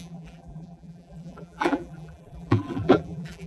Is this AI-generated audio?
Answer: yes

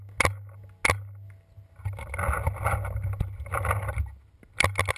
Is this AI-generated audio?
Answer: no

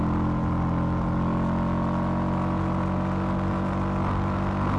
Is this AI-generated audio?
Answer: no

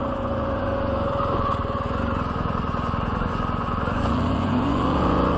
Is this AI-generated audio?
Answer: yes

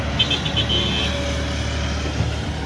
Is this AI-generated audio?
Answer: no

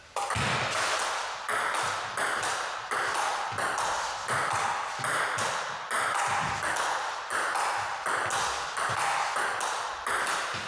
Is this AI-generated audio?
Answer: no